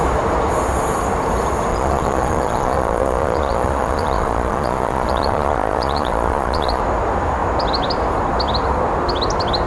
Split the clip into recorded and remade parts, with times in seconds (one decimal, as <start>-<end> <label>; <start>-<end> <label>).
0.0-1.7 recorded; 1.7-6.8 remade; 6.8-9.7 recorded